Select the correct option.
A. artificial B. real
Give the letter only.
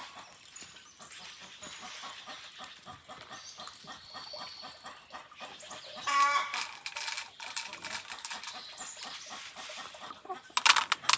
B